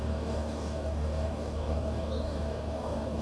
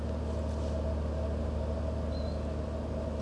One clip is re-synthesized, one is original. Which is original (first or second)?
second